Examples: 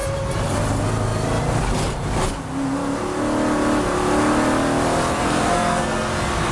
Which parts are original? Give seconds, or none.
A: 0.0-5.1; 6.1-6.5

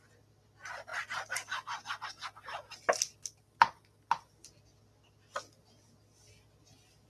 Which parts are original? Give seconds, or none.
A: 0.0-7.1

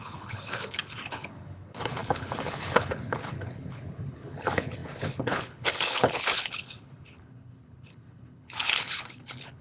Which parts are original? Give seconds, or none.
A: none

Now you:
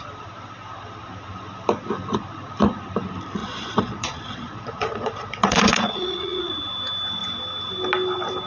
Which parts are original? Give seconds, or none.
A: 0.0-3.4; 6.5-8.5